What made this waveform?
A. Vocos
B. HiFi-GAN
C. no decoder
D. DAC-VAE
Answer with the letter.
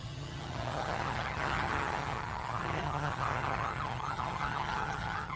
B